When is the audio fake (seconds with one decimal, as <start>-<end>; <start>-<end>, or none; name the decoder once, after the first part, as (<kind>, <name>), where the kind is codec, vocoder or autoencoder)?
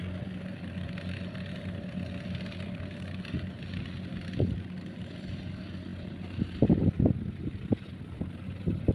none